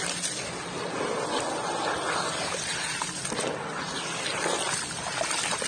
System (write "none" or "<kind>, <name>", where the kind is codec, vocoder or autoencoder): none